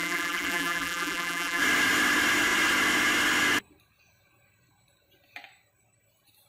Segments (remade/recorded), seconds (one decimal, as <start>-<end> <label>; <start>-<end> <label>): 0.0-1.6 remade; 1.6-6.5 recorded